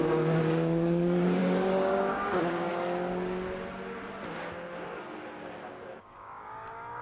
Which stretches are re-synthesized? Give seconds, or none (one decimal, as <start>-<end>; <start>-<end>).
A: 0.0-2.7; 6.0-7.0